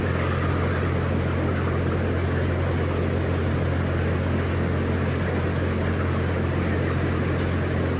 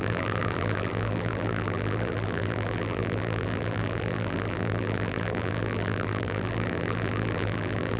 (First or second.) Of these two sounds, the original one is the first